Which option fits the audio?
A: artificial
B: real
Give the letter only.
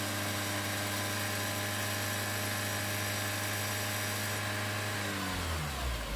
B